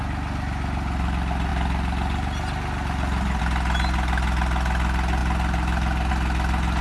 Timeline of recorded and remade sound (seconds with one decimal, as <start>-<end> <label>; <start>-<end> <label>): 0.0-6.8 recorded